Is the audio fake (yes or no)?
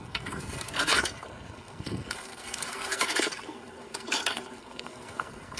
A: yes